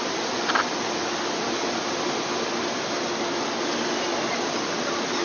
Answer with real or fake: real